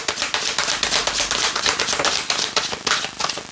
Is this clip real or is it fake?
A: fake